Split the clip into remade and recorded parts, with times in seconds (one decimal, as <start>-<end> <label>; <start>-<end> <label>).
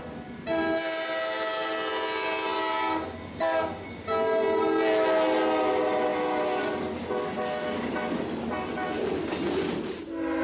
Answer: 0.0-10.4 recorded